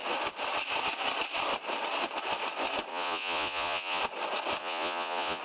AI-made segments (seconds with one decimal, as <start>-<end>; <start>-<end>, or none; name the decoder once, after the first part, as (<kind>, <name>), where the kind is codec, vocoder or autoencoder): 2.9-4.0 (vocoder, Vocos); 4.6-5.4